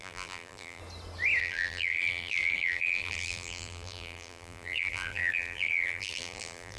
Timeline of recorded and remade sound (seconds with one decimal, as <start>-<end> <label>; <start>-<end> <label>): 0.0-0.8 remade; 0.8-1.4 recorded; 1.4-6.8 remade